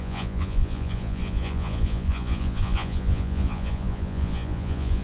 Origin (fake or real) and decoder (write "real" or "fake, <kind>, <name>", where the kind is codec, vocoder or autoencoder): fake, vocoder, Vocos